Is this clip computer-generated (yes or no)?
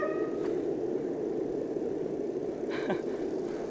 no